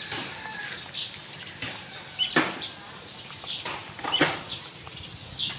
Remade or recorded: recorded